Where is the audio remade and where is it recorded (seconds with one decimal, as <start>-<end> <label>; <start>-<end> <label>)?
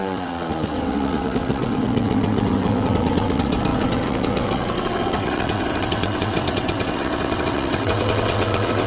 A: 0.0-8.9 remade